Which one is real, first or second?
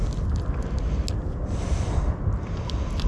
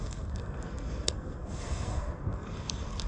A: first